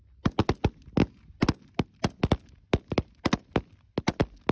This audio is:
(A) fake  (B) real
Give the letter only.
B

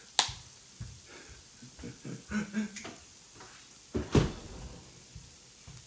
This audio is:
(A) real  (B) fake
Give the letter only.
A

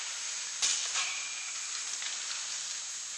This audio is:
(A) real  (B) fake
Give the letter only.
A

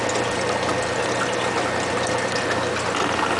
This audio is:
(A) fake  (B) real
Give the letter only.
B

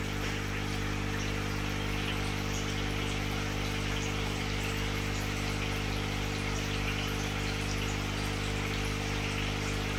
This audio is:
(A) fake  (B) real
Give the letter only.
B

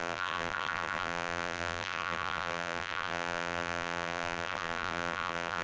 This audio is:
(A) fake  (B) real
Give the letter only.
A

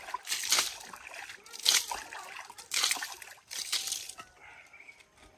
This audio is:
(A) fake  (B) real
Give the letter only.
B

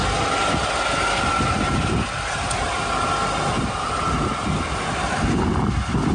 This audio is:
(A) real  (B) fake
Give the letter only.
A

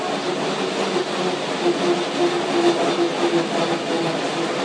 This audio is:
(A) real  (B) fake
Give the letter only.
A